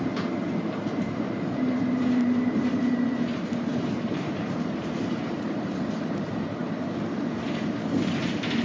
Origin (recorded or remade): remade